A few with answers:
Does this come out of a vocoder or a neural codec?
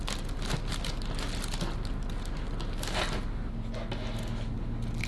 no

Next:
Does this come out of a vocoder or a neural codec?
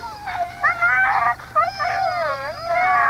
yes